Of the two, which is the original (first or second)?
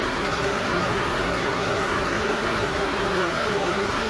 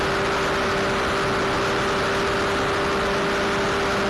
second